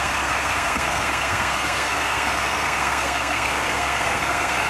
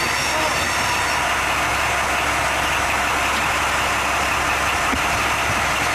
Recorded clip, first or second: second